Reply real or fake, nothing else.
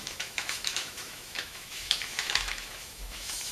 fake